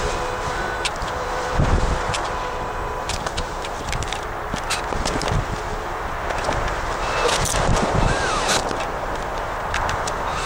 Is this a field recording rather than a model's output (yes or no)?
no